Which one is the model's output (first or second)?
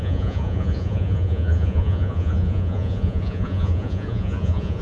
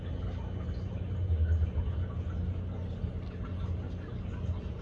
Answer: first